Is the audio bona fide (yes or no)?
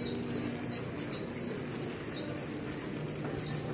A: yes